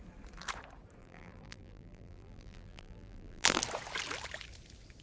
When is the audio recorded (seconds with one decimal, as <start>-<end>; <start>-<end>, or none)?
0.0-1.0; 3.6-5.0